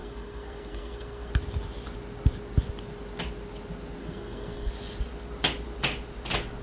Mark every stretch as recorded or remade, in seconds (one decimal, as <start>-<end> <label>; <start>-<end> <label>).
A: 0.0-1.3 remade; 1.3-4.0 recorded; 4.0-4.7 remade; 4.7-6.6 recorded